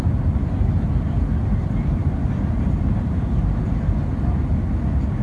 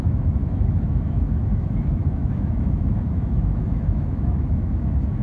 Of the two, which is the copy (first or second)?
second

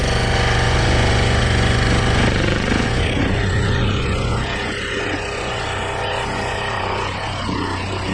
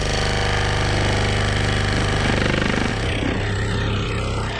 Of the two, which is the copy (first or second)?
first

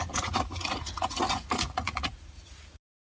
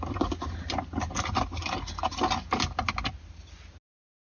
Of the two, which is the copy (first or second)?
first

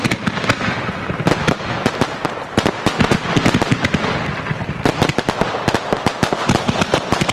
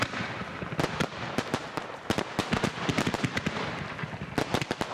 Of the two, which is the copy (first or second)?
second